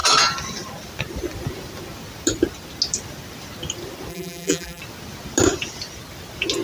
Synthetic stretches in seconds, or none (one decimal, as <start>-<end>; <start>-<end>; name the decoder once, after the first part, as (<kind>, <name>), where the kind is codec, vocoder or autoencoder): 4.1-4.8 (vocoder, BigVGAN v2)